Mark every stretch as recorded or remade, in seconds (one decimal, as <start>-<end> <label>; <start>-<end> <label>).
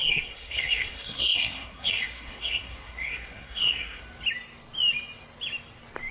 0.0-4.0 remade; 4.0-6.1 recorded